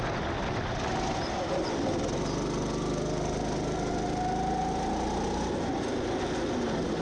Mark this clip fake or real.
real